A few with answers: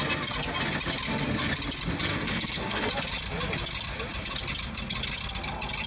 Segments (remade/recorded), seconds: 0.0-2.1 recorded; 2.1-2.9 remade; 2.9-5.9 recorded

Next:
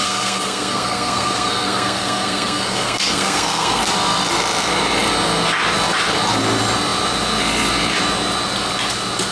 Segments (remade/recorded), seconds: 0.0-3.8 remade; 3.8-9.3 recorded

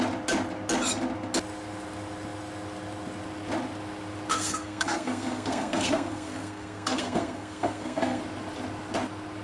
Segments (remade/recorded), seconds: 0.0-4.3 recorded; 4.3-8.2 remade; 8.2-9.4 recorded

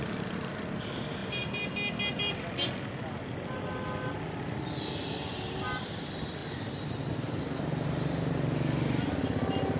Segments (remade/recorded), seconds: 0.0-9.8 recorded

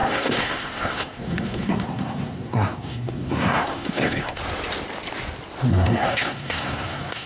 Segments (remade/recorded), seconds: 0.0-4.4 remade; 4.4-5.7 recorded; 5.7-7.3 remade